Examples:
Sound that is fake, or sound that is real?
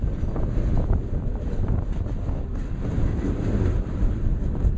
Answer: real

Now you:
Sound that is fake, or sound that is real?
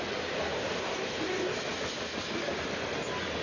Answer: real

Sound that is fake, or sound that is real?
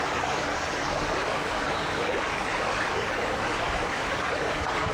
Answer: fake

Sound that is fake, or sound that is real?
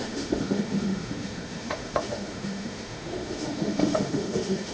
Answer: fake